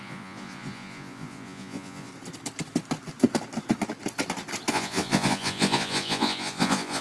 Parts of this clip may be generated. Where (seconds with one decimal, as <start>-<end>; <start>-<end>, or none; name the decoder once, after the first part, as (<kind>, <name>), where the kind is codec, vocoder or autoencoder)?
0.0-2.1 (vocoder, Vocos); 4.7-7.0